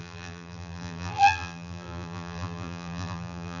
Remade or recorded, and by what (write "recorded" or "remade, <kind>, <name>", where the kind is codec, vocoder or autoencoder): remade, vocoder, BigVGAN v2